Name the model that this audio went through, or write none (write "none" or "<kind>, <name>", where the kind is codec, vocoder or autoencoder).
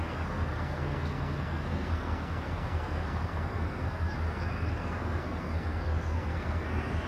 codec, SNAC